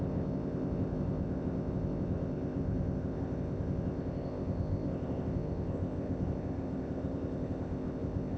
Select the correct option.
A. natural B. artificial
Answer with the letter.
B